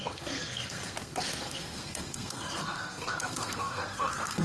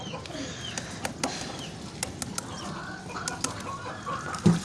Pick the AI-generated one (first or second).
first